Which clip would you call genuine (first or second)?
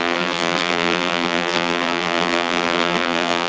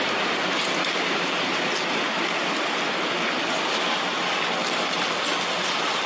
second